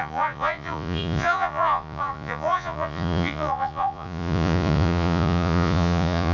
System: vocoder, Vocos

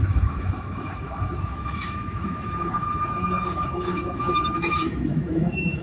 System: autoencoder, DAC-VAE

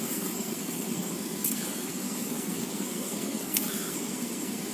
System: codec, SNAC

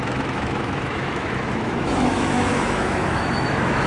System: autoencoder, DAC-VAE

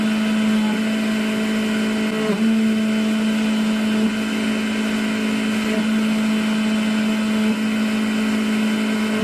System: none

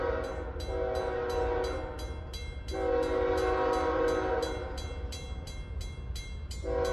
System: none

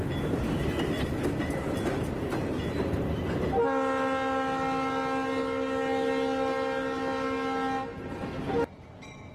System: none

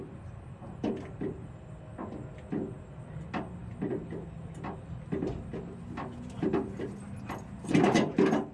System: none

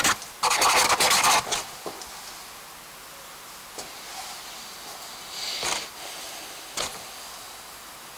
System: none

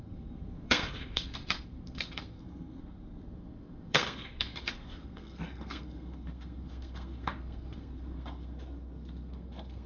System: codec, SNAC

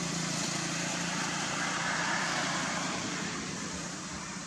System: vocoder, BigVGAN v2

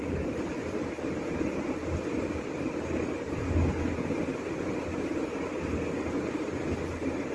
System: none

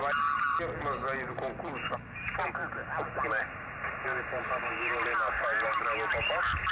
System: none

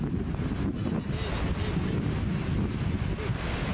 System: none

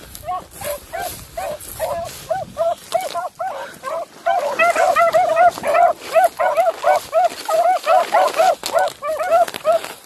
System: none